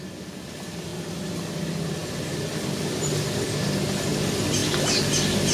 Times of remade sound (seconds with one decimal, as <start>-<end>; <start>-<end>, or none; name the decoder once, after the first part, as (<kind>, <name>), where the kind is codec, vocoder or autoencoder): 4.6-5.1 (vocoder, BigVGAN v2)